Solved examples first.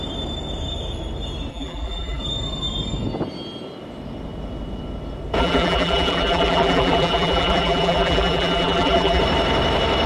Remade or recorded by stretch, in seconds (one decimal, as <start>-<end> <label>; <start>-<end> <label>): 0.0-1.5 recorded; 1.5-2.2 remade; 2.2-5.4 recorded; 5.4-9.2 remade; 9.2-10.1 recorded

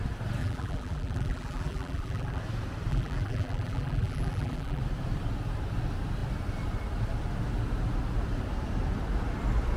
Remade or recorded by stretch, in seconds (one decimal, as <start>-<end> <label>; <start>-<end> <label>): 0.0-0.4 recorded; 0.4-2.4 remade; 2.4-2.9 recorded; 2.9-4.8 remade; 4.8-9.8 recorded

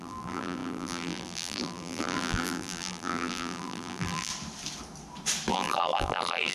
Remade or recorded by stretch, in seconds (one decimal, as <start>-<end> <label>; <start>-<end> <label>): 0.0-4.3 remade; 4.3-5.5 recorded; 5.5-6.5 remade